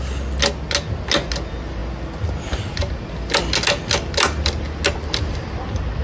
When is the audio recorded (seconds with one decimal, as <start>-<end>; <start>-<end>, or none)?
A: 0.0-6.0